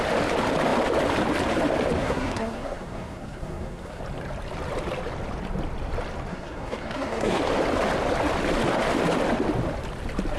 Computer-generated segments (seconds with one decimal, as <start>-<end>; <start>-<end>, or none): 2.0-4.0; 6.3-7.4